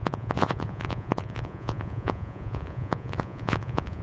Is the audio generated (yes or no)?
yes